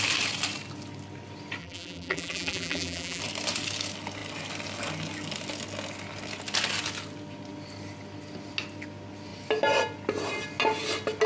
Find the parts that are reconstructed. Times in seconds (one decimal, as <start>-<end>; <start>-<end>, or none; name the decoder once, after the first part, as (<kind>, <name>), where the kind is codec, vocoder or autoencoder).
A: 1.6-3.2 (vocoder, BigVGAN v2)